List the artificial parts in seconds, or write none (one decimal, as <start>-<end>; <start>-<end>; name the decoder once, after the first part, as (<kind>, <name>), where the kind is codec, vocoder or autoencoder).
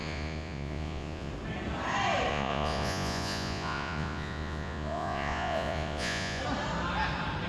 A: 0.0-1.3 (vocoder, Vocos); 2.3-6.4